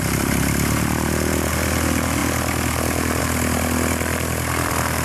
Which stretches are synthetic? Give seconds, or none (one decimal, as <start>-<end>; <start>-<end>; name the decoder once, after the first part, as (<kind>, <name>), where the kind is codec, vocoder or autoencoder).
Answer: none